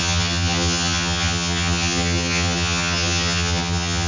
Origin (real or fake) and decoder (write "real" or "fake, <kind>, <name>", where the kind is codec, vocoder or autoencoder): fake, vocoder, HiFi-GAN